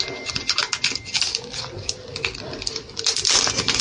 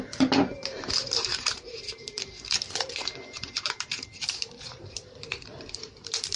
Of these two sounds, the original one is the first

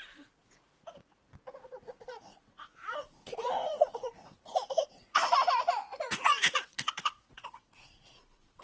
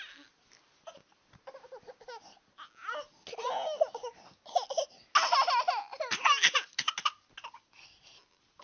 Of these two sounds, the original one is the second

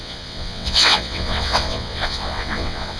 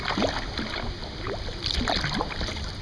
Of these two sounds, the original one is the second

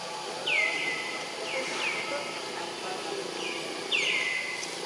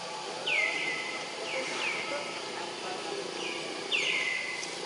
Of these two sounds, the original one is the first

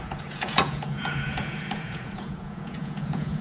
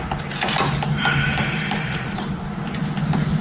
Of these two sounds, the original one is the second